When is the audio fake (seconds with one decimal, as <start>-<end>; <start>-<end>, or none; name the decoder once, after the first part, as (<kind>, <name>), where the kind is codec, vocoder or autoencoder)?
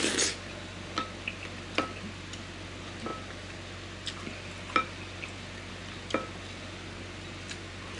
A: none